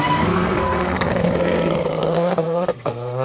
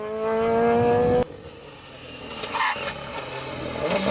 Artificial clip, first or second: first